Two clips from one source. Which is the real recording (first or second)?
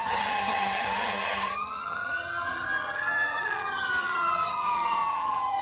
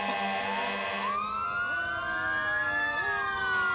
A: second